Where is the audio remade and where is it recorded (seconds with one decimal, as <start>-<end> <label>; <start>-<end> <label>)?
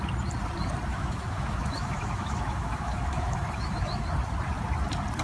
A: 0.0-0.9 recorded; 0.9-4.0 remade; 4.0-5.2 recorded